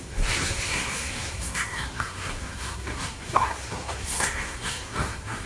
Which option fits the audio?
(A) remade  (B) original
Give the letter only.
A